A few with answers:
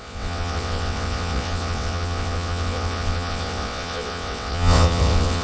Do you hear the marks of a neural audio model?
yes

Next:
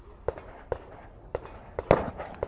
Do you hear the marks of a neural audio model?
no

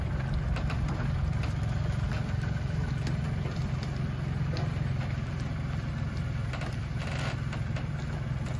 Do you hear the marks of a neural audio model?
no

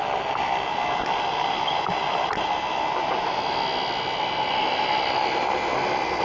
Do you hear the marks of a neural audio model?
no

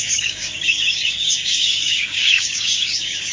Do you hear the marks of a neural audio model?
yes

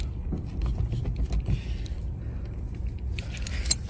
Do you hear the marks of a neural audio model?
no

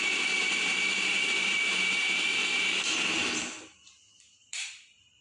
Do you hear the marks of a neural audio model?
yes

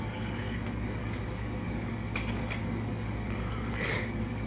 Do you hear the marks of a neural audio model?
yes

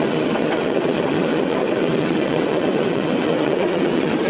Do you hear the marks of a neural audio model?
yes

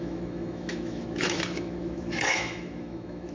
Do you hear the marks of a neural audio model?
yes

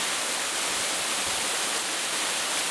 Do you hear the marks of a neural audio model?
no